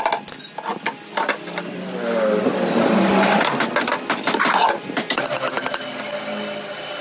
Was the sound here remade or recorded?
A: recorded